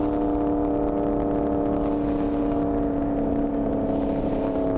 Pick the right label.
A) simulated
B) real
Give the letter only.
B